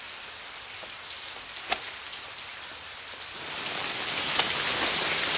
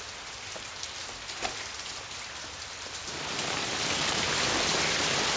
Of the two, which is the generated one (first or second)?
second